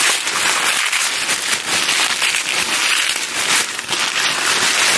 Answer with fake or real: real